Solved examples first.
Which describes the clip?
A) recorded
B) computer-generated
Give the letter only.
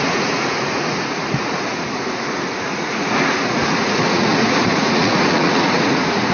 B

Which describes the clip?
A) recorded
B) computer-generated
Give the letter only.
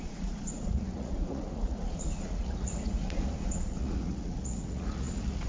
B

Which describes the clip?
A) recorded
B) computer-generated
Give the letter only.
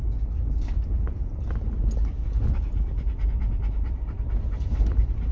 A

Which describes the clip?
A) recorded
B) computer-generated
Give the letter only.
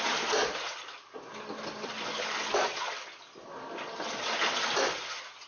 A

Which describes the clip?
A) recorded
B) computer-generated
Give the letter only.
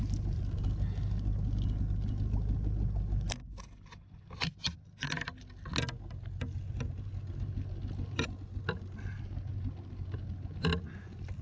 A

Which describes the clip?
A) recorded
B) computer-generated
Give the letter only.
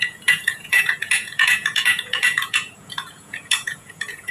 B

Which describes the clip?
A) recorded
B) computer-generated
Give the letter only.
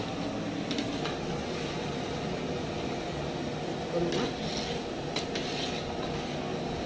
A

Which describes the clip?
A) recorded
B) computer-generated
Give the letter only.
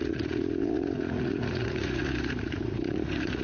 B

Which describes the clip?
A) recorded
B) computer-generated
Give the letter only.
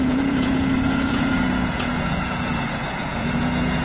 B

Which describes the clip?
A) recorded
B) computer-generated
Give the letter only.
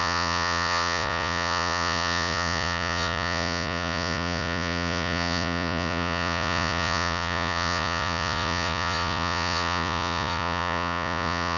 B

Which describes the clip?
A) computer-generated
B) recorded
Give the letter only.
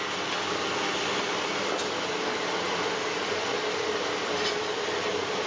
B